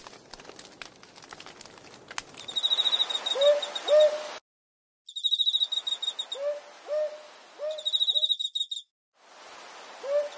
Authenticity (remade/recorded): recorded